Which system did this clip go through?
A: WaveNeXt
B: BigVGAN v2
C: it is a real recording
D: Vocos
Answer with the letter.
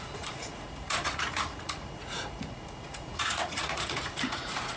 D